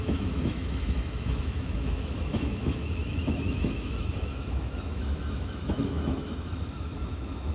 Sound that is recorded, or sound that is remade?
remade